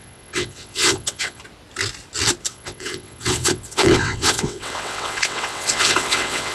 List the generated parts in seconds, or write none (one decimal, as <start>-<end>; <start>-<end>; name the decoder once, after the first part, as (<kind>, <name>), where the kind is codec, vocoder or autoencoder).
0.0-1.4 (vocoder, WaveNeXt); 2.5-6.5